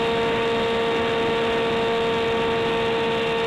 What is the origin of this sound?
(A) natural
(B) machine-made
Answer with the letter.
A